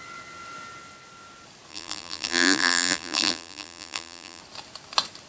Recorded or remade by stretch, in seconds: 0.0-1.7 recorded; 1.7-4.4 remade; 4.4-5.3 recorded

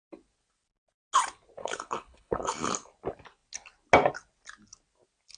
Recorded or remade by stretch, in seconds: 0.0-1.6 recorded; 1.6-2.7 remade; 2.7-5.4 recorded

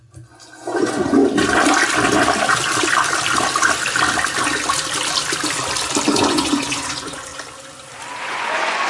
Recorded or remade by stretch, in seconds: 0.0-1.2 remade; 1.2-6.1 recorded; 6.1-7.3 remade; 7.3-8.2 recorded; 8.2-8.9 remade

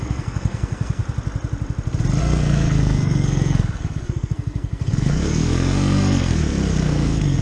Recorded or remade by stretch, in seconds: 0.0-1.0 remade; 1.0-2.2 recorded; 2.2-7.4 remade